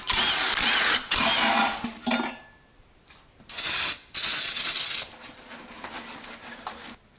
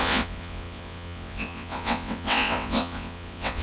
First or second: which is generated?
second